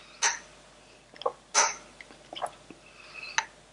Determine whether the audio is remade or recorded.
recorded